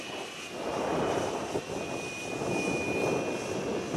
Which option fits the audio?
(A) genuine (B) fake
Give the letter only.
A